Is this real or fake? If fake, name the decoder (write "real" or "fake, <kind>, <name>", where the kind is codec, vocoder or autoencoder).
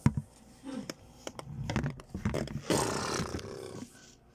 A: real